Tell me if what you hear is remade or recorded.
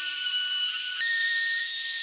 remade